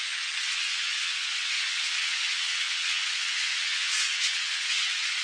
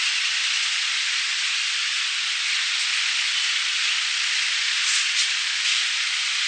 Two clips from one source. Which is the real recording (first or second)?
second